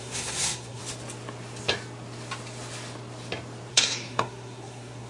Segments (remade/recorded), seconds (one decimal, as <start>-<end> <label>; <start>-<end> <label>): 0.0-0.8 remade; 0.8-3.7 recorded; 3.7-5.1 remade